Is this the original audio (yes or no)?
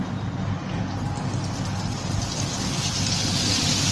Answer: yes